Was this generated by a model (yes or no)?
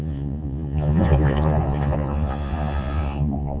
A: yes